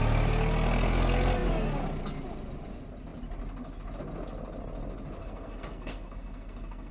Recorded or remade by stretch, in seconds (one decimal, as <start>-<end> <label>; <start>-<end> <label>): 0.0-5.2 recorded; 5.2-6.9 remade